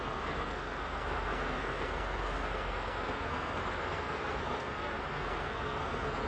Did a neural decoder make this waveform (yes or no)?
yes